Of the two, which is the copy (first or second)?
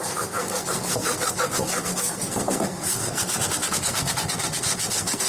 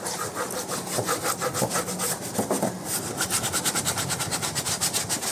first